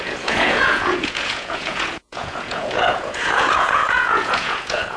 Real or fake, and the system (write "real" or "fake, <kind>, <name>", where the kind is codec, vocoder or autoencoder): fake, vocoder, Vocos